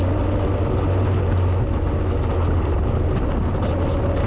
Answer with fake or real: real